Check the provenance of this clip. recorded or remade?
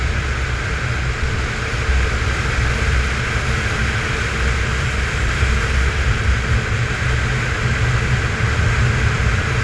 recorded